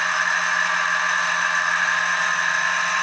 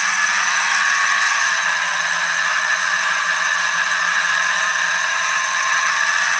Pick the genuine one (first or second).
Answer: first